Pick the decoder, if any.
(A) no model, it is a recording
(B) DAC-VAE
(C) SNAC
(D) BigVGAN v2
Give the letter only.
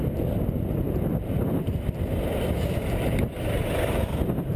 A